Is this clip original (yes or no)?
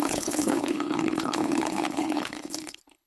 no